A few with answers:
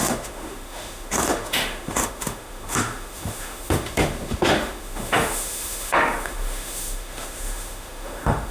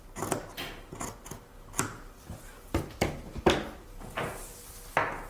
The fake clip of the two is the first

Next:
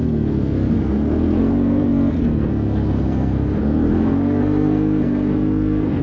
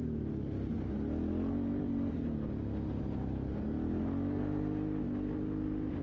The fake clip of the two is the first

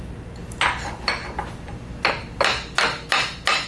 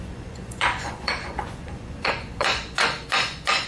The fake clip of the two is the second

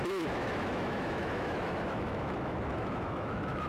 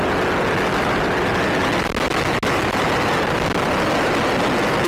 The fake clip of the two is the first